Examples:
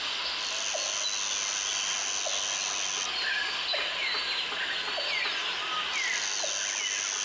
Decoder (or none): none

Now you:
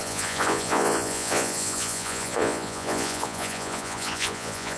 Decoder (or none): vocoder, Vocos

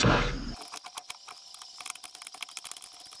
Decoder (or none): none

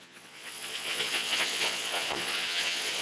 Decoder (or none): vocoder, Vocos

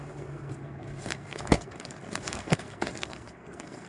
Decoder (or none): codec, SNAC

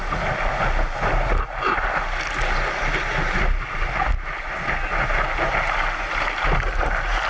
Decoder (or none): none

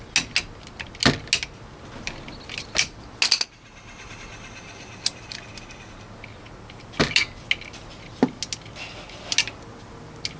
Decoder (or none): none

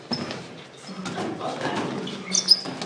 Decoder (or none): none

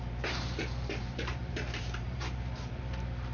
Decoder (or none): vocoder, BigVGAN v2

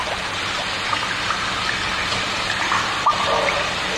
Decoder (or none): none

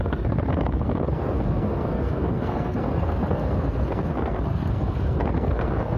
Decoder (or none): codec, SNAC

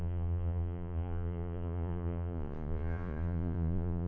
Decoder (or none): vocoder, Vocos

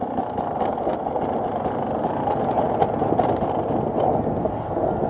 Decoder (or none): none